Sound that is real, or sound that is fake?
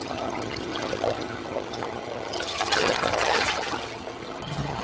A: fake